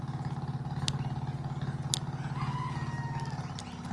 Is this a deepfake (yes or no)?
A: no